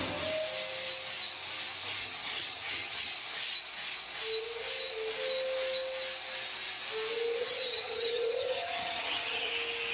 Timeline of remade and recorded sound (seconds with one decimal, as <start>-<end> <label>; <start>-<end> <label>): 0.0-2.0 recorded; 2.0-3.1 remade; 3.1-7.4 recorded; 7.4-9.5 remade; 9.5-9.9 recorded